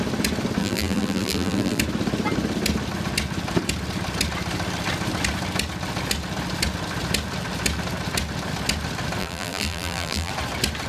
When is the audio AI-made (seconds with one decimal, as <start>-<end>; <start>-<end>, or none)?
0.6-1.8; 9.2-10.3